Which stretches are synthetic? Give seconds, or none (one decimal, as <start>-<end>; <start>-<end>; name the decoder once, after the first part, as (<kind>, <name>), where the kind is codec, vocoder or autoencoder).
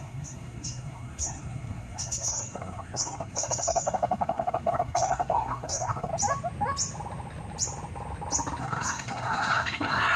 0.0-6.1 (codec, SNAC); 8.6-10.2